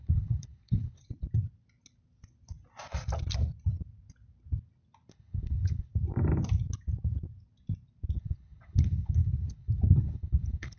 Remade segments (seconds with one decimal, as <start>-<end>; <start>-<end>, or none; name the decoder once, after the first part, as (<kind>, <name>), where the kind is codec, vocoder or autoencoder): 0.0-1.0 (codec, HILCodec); 5.1-5.9; 8.2-10.8